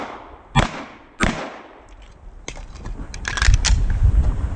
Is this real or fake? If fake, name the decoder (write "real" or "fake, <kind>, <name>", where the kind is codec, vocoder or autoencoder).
real